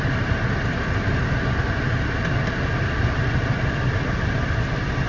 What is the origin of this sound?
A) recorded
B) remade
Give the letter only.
A